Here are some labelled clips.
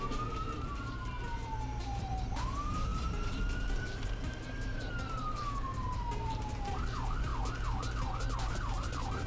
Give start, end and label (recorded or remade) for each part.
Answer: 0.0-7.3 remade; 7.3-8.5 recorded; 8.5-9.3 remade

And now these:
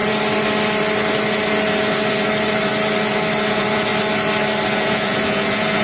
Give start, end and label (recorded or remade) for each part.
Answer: 0.0-3.5 recorded; 3.5-3.9 remade; 3.9-4.7 recorded; 4.7-5.8 remade

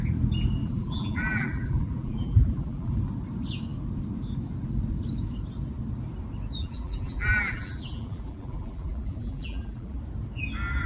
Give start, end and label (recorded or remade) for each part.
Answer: 0.0-0.6 recorded; 0.6-3.0 remade; 3.0-6.6 recorded; 6.6-10.0 remade; 10.0-10.9 recorded

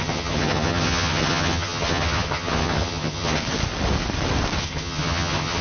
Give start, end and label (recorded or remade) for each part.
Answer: 0.0-3.4 remade; 3.4-4.6 recorded; 4.6-5.6 remade

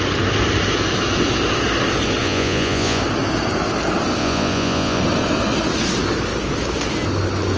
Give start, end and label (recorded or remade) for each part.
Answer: 0.0-2.2 recorded; 2.2-3.0 remade; 3.0-4.2 recorded; 4.2-5.0 remade; 5.0-7.6 recorded

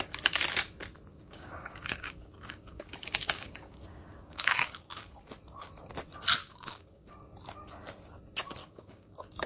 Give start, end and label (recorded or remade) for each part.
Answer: 0.0-1.1 recorded; 1.1-5.1 remade; 5.1-6.4 recorded; 6.4-7.1 remade; 7.1-8.6 recorded; 8.6-9.5 remade

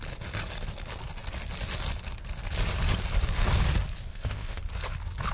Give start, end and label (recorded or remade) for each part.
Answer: 0.0-4.1 recorded; 4.1-4.6 remade; 4.6-5.3 recorded